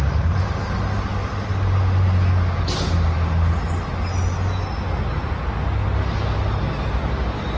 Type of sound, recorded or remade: recorded